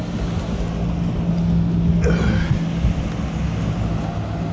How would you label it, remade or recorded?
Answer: recorded